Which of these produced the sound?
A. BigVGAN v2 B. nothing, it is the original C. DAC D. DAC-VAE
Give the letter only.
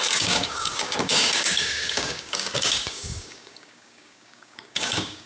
C